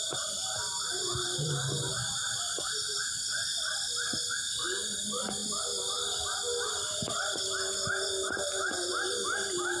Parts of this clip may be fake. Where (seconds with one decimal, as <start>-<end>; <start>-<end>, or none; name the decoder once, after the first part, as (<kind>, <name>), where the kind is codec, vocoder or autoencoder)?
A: none